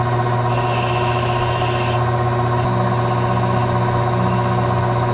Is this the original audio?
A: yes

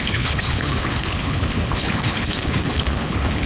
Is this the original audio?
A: no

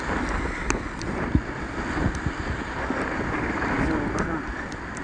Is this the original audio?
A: yes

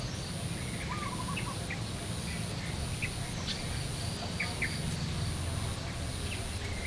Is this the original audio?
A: yes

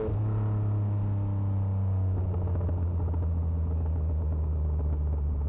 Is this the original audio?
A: yes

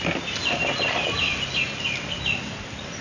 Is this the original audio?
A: yes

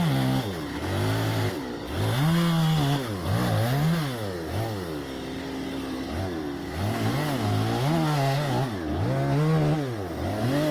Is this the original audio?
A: yes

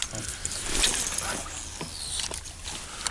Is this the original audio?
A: yes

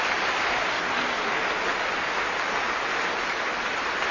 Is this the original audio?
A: yes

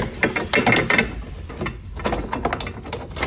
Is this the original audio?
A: yes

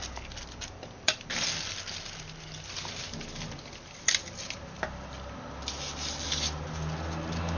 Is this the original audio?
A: yes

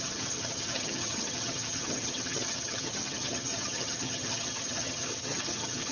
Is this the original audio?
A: no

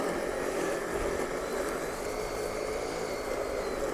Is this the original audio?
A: yes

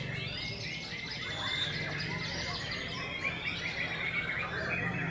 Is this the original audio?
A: yes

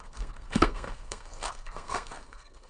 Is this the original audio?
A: no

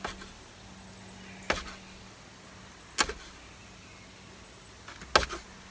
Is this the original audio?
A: yes